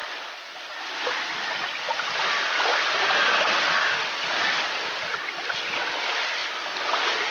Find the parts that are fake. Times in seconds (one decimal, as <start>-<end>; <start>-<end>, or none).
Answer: 0.7-6.4